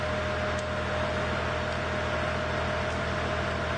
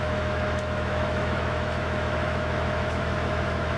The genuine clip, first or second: first